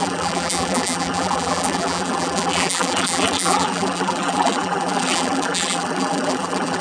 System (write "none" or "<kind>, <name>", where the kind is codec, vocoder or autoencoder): vocoder, BigVGAN v2